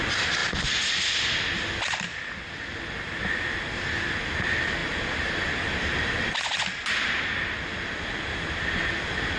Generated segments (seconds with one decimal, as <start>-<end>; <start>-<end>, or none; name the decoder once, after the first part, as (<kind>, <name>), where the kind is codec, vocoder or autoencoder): 0.4-1.2 (vocoder, BigVGAN v2); 4.8-6.9